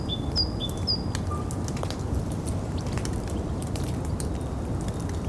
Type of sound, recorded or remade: recorded